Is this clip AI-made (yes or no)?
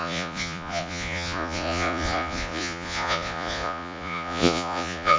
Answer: yes